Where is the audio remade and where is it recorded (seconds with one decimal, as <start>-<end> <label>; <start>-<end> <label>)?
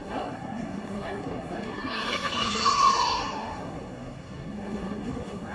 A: 0.0-5.5 remade